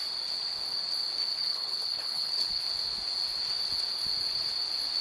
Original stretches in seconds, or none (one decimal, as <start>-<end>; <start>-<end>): 0.0-1.3; 2.6-5.0